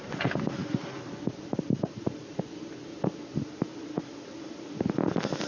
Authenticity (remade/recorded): recorded